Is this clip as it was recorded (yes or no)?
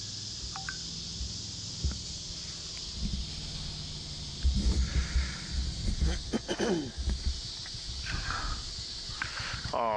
yes